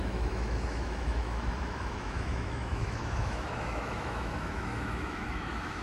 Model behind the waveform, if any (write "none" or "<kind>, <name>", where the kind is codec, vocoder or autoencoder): autoencoder, DAC-VAE